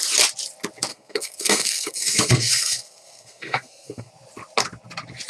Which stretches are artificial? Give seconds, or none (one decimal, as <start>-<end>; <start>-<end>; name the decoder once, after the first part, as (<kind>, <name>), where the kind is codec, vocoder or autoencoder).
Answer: 0.9-4.1 (codec, SNAC)